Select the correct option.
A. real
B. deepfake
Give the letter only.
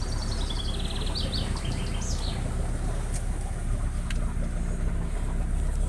A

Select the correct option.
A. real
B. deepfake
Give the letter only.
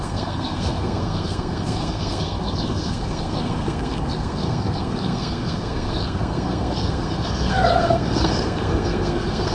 B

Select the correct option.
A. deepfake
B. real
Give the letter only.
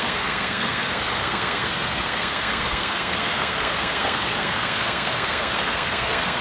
A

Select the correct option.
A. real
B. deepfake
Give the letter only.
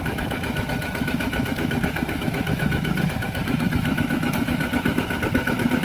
B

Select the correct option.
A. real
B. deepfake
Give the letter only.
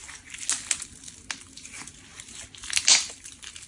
A